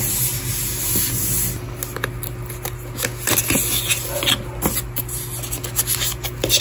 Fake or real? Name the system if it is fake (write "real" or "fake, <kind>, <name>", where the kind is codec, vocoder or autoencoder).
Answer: real